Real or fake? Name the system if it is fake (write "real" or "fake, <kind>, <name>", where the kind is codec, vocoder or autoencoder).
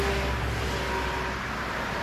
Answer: real